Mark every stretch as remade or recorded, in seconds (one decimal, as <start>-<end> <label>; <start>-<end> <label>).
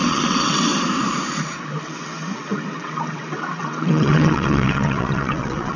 0.0-0.7 remade; 0.7-1.8 recorded; 1.8-5.8 remade